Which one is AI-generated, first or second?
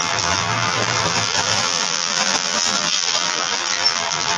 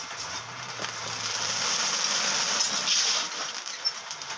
first